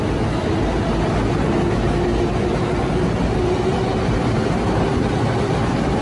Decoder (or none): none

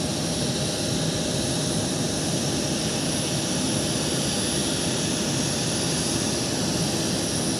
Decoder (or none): none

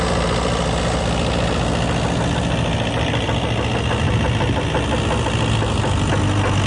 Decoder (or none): none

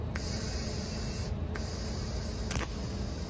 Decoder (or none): none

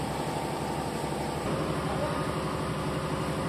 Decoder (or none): none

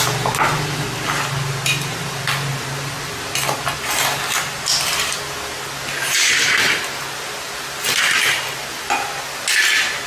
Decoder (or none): none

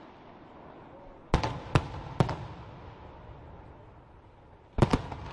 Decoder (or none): none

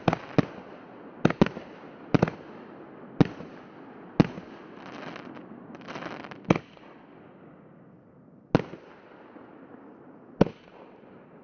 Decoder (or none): none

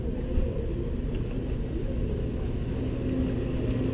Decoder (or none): none